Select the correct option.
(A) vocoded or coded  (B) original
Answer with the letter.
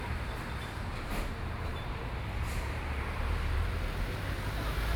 A